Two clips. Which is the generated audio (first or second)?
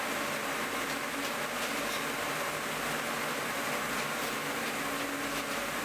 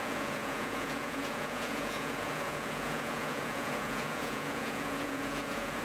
second